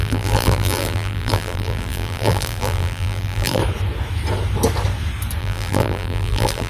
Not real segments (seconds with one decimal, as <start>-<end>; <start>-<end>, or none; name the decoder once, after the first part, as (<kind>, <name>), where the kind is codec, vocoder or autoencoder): 0.0-3.6 (vocoder, BigVGAN v2); 5.4-6.7